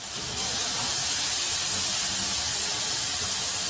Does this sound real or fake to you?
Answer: real